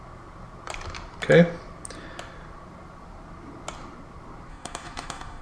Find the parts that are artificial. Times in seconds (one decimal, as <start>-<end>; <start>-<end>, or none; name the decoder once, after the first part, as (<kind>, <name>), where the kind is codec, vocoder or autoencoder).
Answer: 4.5-5.4 (autoencoder, DAC-VAE)

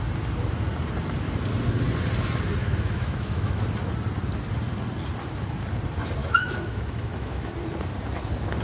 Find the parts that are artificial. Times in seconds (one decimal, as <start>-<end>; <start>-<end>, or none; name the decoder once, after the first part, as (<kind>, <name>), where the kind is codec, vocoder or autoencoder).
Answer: 2.6-3.6 (autoencoder, DAC-VAE); 6.2-7.5

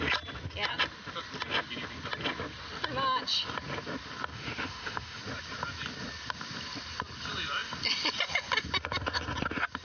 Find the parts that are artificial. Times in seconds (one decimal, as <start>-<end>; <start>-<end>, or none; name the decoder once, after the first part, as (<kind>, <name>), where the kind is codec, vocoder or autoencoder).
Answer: 4.3-5.2 (autoencoder, DAC-VAE)

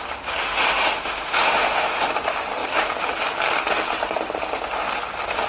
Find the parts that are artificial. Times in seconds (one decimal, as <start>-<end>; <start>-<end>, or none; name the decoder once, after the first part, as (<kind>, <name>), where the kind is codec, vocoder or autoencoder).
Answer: 0.4-2.1 (autoencoder, DAC-VAE)

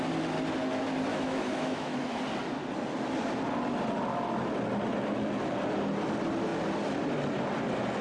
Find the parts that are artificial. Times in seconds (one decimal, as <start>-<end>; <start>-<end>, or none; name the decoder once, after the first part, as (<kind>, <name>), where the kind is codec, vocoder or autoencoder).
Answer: 1.1-2.2 (autoencoder, DAC-VAE)

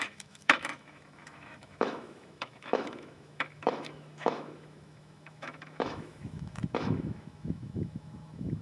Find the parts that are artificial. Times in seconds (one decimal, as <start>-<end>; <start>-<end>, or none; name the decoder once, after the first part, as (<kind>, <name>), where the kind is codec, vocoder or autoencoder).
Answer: 0.0-8.6 (autoencoder, DAC-VAE)

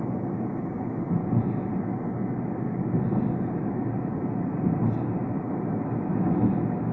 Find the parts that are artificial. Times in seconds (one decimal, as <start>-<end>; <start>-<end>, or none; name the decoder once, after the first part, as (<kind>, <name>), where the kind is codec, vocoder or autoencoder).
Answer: 0.0-1.2 (autoencoder, DAC-VAE); 3.5-4.1; 5.3-6.9